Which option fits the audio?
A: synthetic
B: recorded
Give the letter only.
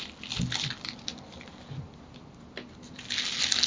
B